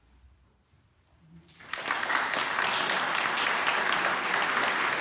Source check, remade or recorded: recorded